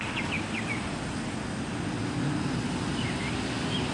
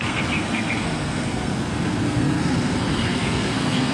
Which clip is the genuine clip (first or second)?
first